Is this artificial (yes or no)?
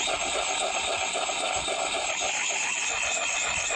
no